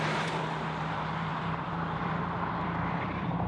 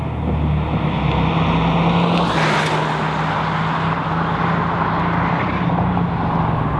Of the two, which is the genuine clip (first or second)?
second